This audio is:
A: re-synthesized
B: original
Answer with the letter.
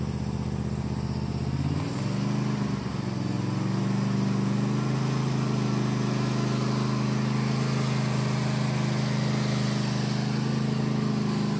B